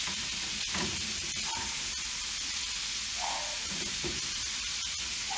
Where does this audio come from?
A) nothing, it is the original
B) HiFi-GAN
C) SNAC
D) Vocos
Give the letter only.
D